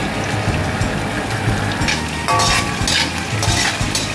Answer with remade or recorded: recorded